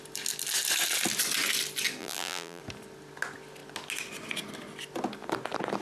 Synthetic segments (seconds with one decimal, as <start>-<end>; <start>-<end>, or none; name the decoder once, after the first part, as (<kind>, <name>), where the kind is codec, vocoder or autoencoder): 2.0-2.6 (vocoder, BigVGAN v2)